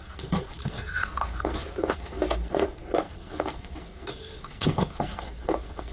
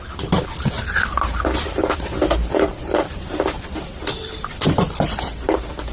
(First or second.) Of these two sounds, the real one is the second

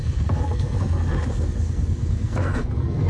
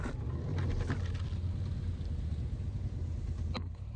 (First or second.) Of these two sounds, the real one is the second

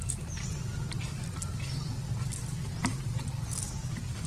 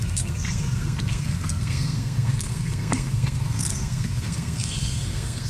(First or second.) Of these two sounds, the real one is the first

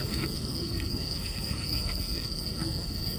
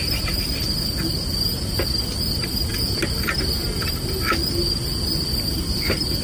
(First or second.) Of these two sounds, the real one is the second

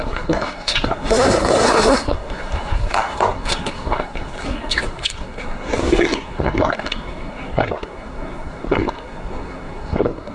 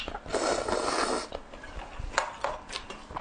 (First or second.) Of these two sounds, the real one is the second